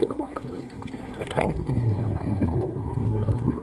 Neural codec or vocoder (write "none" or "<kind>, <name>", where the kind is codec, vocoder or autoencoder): codec, SNAC